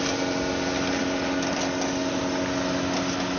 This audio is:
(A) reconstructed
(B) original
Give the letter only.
A